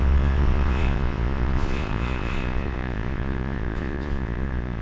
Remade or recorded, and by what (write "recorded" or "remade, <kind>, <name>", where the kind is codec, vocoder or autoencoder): remade, vocoder, Vocos